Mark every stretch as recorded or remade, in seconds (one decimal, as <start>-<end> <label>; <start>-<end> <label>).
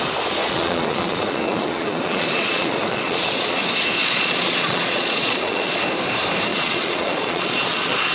0.0-0.4 recorded; 0.4-3.6 remade; 3.6-4.0 recorded; 4.0-5.8 remade; 5.8-6.5 recorded; 6.5-8.1 remade